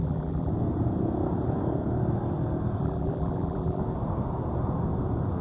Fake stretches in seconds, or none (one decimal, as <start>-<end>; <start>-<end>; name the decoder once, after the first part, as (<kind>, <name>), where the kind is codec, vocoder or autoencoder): 0.0-0.5 (vocoder, BigVGAN v2); 2.8-3.8

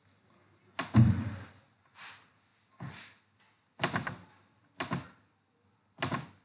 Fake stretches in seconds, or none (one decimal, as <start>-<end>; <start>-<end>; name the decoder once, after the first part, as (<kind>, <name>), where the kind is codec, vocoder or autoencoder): none

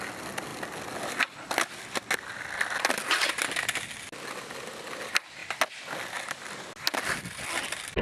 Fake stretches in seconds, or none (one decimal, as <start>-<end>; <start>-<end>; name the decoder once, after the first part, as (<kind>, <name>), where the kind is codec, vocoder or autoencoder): none

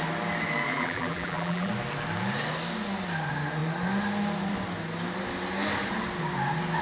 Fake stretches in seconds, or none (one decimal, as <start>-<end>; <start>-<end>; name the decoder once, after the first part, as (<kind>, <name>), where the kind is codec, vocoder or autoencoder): 0.7-1.7 (vocoder, BigVGAN v2)

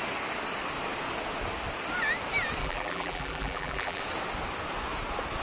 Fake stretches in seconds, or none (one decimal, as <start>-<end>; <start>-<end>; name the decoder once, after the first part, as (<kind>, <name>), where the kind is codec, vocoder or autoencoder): 2.6-4.0 (vocoder, BigVGAN v2)

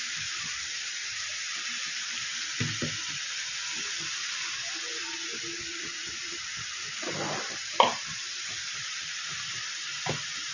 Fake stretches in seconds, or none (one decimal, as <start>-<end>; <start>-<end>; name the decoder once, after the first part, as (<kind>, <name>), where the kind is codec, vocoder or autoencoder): 0.0-2.3 (vocoder, BigVGAN v2); 5.6-10.5